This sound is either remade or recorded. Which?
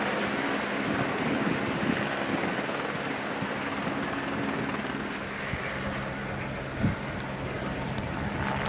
recorded